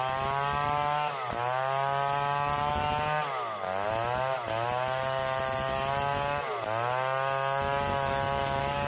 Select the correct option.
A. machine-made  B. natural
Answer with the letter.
B